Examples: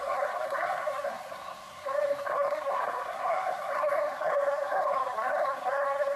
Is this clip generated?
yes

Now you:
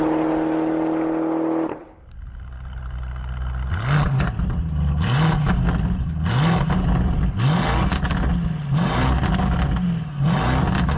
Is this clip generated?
no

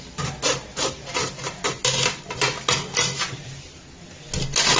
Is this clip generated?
no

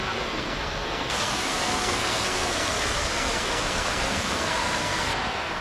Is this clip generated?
yes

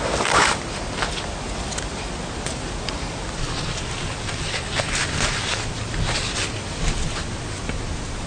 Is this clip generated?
no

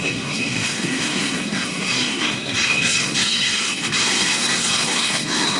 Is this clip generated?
yes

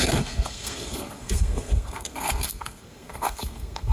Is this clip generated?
yes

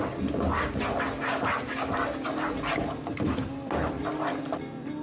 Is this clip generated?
no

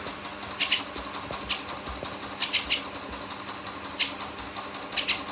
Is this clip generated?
no